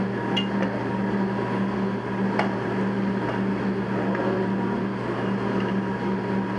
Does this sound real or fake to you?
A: real